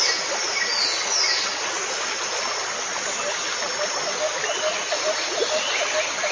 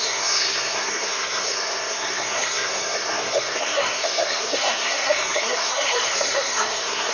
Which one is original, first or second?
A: first